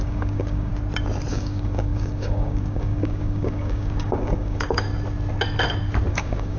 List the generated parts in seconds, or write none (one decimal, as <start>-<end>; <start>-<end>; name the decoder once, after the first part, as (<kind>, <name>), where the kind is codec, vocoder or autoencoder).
0.0-0.7 (codec, DAC); 1.3-4.9; 6.1-6.6